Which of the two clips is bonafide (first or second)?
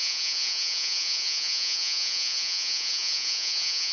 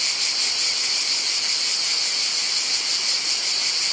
second